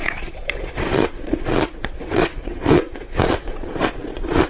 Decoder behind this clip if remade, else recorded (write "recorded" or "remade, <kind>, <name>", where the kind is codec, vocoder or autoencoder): remade, vocoder, Vocos